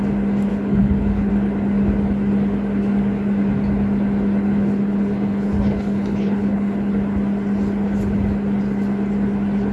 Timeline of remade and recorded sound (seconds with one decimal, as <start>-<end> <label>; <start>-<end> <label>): 0.0-0.5 recorded; 0.5-1.3 remade; 1.3-4.5 recorded; 4.5-6.9 remade; 6.9-9.7 recorded

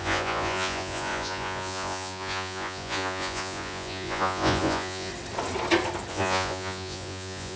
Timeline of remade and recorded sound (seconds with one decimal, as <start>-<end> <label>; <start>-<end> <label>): 0.0-5.1 remade; 5.1-6.1 recorded; 6.1-7.6 remade

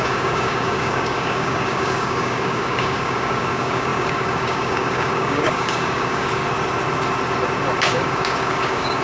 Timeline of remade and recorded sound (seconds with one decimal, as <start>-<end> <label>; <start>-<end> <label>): 0.0-6.4 remade; 6.4-7.8 recorded; 7.8-9.0 remade

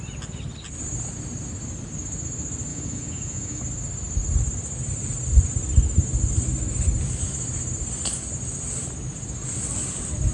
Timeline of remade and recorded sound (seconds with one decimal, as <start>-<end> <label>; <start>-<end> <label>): 0.0-2.7 recorded; 2.7-3.6 remade; 3.6-10.3 recorded

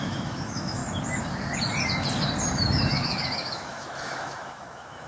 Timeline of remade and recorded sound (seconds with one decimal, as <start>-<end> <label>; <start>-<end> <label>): 0.0-0.8 remade; 0.8-2.5 recorded; 2.5-5.1 remade